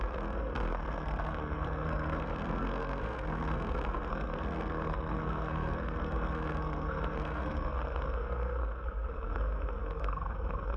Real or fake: fake